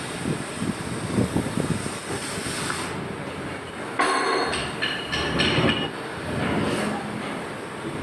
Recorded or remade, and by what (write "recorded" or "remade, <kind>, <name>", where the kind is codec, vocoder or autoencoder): recorded